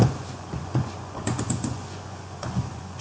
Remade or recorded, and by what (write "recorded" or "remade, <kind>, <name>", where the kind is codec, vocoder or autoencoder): remade, vocoder, Vocos